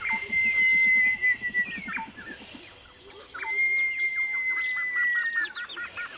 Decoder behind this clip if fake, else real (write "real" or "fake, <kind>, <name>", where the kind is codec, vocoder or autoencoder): real